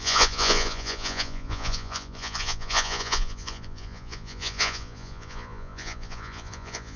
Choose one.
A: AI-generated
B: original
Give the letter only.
A